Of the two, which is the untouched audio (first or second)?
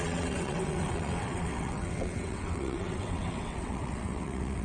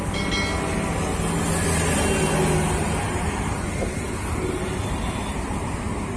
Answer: second